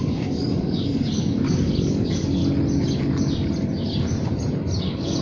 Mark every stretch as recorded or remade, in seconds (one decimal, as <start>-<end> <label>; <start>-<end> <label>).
0.0-2.4 remade; 2.4-4.8 recorded; 4.8-5.2 remade